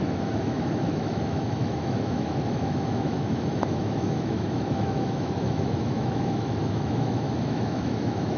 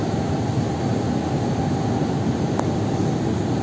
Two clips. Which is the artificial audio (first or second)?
first